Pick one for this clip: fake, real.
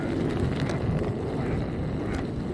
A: real